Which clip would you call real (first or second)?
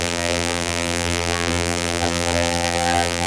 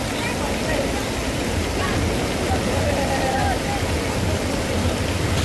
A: second